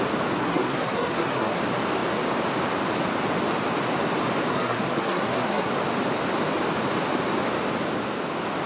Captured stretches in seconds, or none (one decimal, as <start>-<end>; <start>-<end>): 0.0-0.4; 1.6-4.5; 5.7-8.7